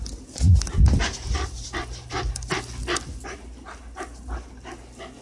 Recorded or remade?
recorded